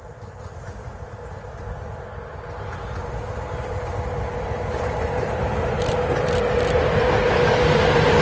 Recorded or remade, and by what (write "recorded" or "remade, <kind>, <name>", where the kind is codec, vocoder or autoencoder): recorded